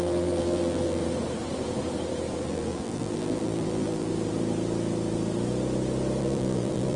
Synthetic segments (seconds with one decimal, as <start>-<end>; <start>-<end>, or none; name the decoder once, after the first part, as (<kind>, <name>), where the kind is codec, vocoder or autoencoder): 0.0-1.0 (vocoder, BigVGAN v2); 2.4-4.1; 6.2-7.0